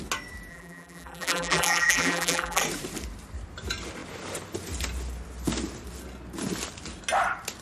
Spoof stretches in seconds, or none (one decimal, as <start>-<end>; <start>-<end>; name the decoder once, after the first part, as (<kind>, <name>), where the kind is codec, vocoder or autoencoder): 0.5-2.6 (vocoder, BigVGAN v2)